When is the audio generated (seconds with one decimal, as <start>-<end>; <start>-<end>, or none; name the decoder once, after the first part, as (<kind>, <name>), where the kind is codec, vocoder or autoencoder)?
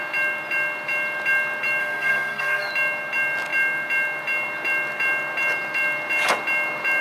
1.8-2.7 (codec, SNAC)